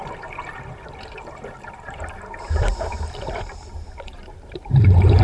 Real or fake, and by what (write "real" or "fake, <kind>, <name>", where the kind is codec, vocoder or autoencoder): fake, vocoder, BigVGAN v2